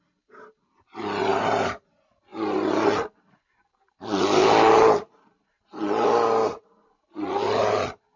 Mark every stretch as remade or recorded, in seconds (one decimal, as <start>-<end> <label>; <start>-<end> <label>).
0.0-8.2 recorded